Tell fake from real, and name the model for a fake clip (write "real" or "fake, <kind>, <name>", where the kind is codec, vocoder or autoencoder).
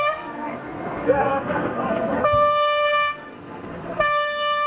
fake, codec, SNAC